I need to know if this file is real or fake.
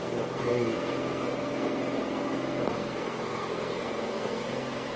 fake